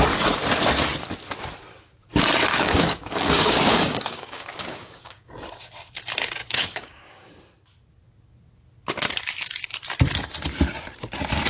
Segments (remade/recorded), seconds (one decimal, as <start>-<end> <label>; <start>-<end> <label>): 0.0-2.5 recorded; 2.5-5.3 remade; 5.3-6.4 recorded; 6.4-7.3 remade; 7.3-11.5 recorded